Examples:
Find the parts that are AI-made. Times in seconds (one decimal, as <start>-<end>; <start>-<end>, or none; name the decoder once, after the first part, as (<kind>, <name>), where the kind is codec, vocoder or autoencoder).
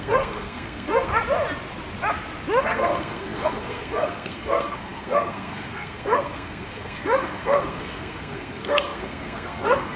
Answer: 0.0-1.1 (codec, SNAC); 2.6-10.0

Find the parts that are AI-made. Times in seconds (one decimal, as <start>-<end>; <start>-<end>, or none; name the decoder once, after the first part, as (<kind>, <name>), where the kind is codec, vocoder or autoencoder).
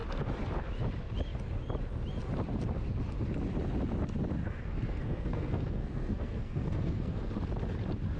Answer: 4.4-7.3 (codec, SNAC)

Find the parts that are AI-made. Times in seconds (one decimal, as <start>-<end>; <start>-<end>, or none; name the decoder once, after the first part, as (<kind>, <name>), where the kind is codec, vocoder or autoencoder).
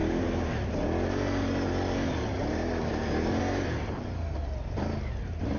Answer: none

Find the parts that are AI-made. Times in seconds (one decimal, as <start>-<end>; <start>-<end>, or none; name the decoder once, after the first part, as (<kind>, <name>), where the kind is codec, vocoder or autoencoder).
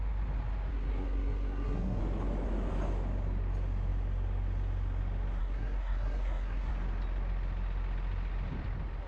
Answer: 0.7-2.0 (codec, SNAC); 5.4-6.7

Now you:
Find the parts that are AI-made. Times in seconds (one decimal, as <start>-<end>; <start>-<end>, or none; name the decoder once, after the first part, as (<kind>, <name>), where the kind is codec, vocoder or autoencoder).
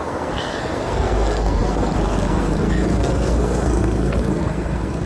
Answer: 0.0-5.1 (codec, SNAC)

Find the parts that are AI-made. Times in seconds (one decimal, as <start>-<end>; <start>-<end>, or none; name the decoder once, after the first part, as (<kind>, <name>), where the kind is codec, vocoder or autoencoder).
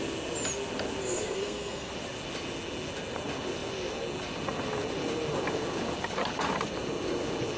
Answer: 1.0-1.9 (codec, SNAC)